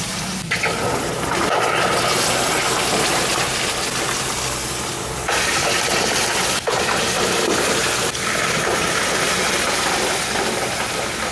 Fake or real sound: real